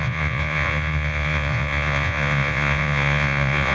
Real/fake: fake